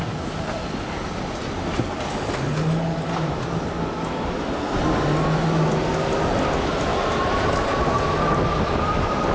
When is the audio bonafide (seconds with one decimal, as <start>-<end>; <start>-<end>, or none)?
0.0-9.3